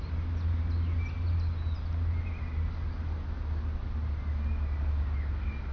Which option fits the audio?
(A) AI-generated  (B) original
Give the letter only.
B